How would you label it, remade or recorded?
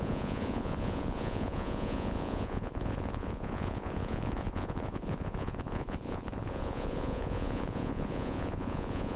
remade